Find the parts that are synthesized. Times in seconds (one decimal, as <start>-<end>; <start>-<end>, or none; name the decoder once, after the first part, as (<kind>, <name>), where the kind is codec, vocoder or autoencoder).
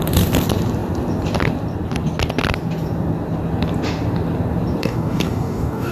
4.8-5.9 (codec, DAC)